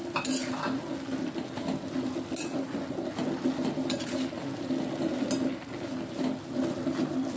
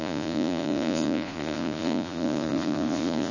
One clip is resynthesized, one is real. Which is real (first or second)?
first